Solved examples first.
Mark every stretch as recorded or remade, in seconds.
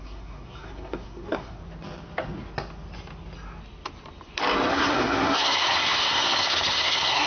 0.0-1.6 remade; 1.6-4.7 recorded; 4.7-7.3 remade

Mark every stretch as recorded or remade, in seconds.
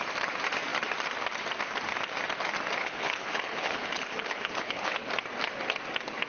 0.0-2.8 recorded; 2.8-5.1 remade; 5.1-6.3 recorded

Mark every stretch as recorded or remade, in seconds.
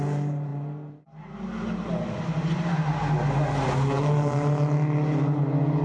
0.0-5.8 recorded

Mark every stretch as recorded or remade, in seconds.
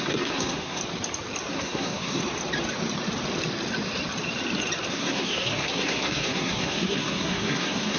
0.0-0.8 remade; 0.8-1.5 recorded; 1.5-2.2 remade; 2.2-4.9 recorded; 4.9-8.0 remade